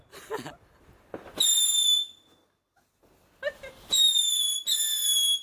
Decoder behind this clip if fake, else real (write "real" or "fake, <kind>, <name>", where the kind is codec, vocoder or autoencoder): real